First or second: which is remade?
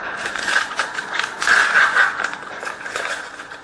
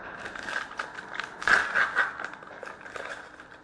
first